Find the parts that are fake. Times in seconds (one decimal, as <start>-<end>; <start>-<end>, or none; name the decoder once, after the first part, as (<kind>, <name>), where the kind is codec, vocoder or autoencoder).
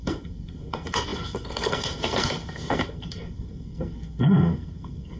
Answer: 0.0-5.2 (codec, SNAC)